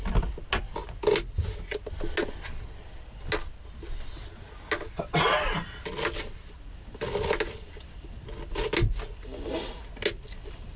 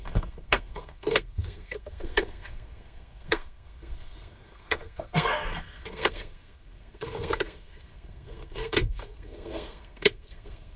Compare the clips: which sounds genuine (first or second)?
first